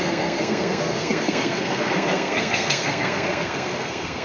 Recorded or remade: remade